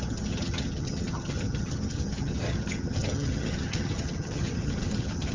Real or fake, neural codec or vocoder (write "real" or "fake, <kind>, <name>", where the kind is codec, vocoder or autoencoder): fake, vocoder, HiFi-GAN